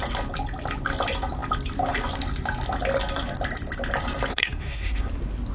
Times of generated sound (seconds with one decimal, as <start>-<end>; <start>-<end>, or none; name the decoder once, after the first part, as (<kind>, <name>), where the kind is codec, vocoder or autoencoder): 4.3-5.1 (codec, SNAC)